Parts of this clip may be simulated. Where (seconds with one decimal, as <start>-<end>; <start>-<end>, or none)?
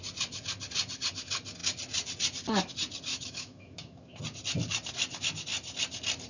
3.1-4.2